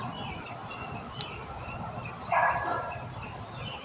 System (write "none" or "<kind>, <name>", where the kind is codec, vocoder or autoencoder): none